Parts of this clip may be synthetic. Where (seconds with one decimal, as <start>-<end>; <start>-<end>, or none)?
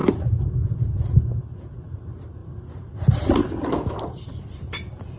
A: 0.0-2.0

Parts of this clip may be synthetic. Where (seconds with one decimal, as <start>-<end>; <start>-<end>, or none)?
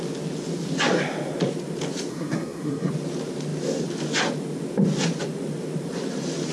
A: 2.1-2.9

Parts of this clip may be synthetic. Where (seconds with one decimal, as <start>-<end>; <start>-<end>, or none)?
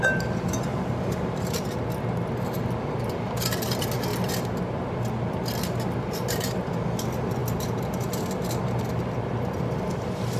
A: 0.7-1.6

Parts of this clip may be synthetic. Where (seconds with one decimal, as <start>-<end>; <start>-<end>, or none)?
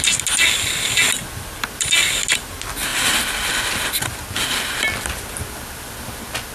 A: none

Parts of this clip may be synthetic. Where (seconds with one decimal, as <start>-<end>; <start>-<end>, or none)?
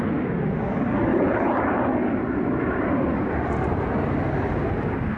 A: 1.1-1.6